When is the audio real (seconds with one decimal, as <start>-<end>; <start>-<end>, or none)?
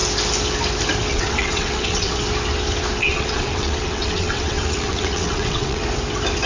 0.0-1.1; 2.2-3.0; 5.8-6.5